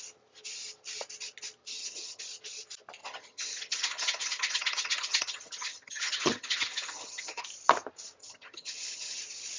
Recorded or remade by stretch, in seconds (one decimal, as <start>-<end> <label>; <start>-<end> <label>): 0.0-1.7 recorded; 1.7-2.2 remade; 2.2-3.0 recorded; 3.0-7.4 remade; 7.4-8.2 recorded; 8.2-9.2 remade; 9.2-9.6 recorded